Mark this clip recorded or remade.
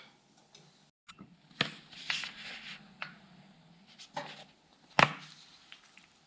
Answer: recorded